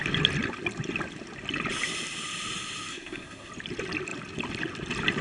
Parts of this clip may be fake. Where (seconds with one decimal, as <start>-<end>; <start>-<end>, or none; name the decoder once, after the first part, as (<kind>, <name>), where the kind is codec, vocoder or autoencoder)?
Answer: 2.9-3.5 (codec, SNAC)